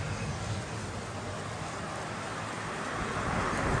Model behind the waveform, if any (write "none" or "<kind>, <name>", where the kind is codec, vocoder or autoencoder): none